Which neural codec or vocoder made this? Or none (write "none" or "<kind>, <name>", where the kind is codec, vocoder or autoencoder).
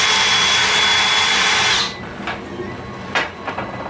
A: none